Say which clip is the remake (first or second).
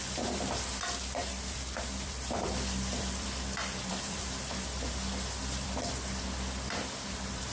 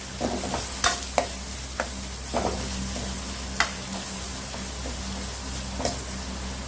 first